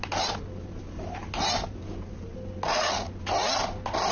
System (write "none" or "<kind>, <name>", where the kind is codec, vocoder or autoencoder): none